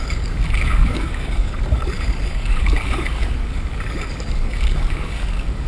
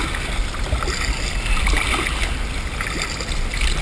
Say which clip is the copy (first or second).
first